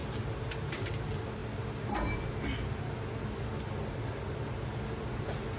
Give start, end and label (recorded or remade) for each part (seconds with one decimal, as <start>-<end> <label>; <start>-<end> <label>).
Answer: 0.0-0.9 remade; 0.9-5.6 recorded